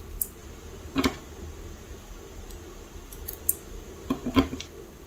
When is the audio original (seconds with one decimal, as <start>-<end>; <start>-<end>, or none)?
0.0-5.1